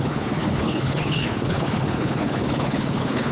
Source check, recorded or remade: remade